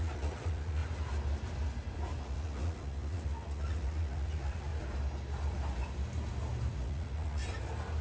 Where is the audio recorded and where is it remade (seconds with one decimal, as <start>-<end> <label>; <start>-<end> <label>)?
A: 0.0-0.8 remade; 0.8-2.2 recorded; 2.2-4.7 remade; 4.7-6.7 recorded; 6.7-7.4 remade; 7.4-8.0 recorded

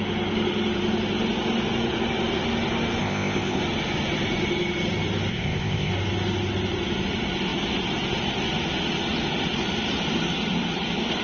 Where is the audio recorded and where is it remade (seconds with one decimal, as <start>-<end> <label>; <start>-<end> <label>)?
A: 0.0-3.0 recorded; 3.0-3.6 remade; 3.6-5.3 recorded; 5.3-5.9 remade; 5.9-11.2 recorded

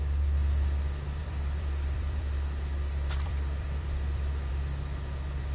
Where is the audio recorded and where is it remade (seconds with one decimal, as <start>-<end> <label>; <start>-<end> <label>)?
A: 0.0-1.2 recorded; 1.2-4.5 remade; 4.5-5.5 recorded